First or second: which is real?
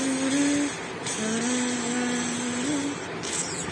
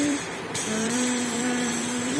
first